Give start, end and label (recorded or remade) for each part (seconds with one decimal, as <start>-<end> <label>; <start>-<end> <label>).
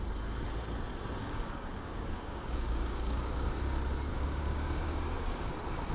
0.0-1.2 recorded; 1.2-3.5 remade; 3.5-4.1 recorded; 4.1-5.5 remade; 5.5-5.9 recorded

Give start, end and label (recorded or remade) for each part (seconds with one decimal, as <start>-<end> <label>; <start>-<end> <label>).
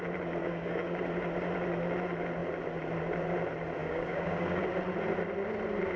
0.0-0.4 recorded; 0.4-1.0 remade; 1.0-3.8 recorded; 3.8-4.6 remade; 4.6-6.0 recorded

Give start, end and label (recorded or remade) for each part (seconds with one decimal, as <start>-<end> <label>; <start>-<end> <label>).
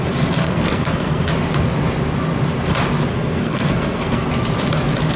0.0-0.4 recorded; 0.4-1.3 remade; 1.3-3.1 recorded; 3.1-4.3 remade; 4.3-5.2 recorded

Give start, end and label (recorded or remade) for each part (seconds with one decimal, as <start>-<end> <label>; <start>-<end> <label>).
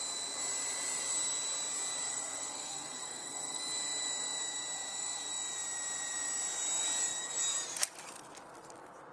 0.0-2.1 recorded; 2.1-3.6 remade; 3.6-9.1 recorded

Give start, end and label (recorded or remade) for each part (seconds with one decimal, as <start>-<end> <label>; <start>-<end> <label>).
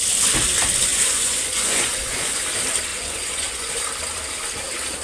0.0-0.9 recorded; 0.9-2.4 remade; 2.4-2.9 recorded; 2.9-3.7 remade; 3.7-5.0 recorded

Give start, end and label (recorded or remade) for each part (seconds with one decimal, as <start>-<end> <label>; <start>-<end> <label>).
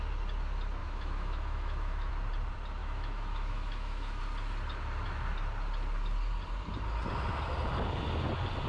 0.0-0.8 recorded; 0.8-2.1 remade; 2.1-2.8 recorded; 2.8-4.2 remade; 4.2-8.7 recorded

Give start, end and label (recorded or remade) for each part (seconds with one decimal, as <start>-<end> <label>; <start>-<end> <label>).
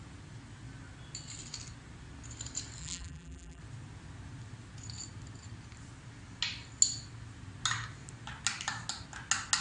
0.0-2.8 recorded; 2.8-3.6 remade; 3.6-9.6 recorded